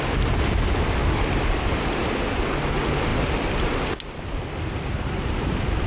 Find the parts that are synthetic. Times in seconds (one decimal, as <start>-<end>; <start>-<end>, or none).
none